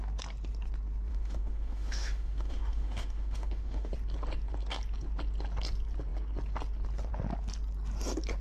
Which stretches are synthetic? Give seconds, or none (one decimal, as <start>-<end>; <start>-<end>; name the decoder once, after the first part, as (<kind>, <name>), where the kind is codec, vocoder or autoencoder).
1.1-3.9 (autoencoder, DAC-VAE)